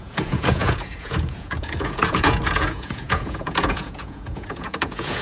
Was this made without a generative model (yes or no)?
no